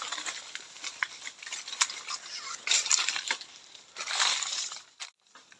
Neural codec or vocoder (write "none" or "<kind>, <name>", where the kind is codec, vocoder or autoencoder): none